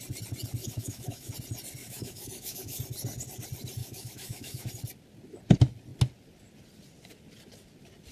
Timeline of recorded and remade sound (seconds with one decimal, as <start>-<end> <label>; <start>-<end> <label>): 0.0-0.6 recorded; 0.6-1.3 remade; 1.3-1.8 recorded; 1.8-2.8 remade; 2.8-3.8 recorded; 3.8-4.7 remade; 4.7-8.1 recorded